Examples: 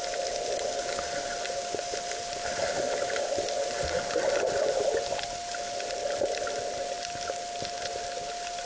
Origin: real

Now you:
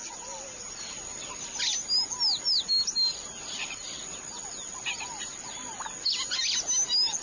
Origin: real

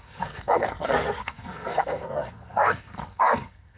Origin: fake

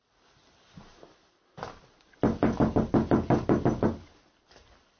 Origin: real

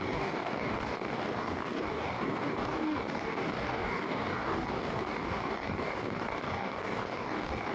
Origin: fake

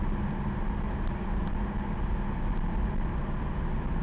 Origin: real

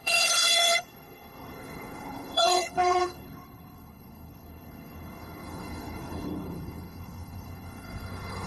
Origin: fake